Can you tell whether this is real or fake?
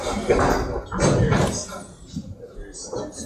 real